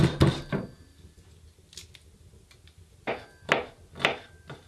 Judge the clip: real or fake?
real